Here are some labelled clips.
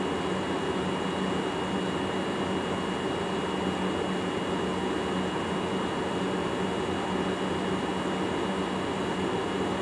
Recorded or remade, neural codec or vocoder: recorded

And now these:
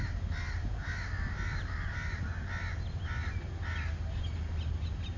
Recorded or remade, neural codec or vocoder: recorded